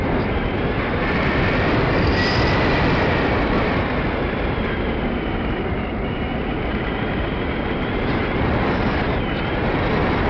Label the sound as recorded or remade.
recorded